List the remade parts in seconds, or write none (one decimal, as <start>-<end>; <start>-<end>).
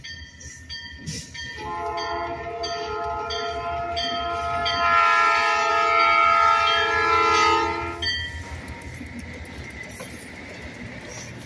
none